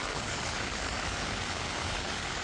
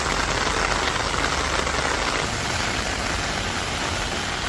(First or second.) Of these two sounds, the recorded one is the second